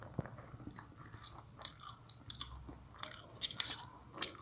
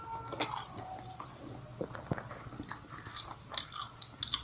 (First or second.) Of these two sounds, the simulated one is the first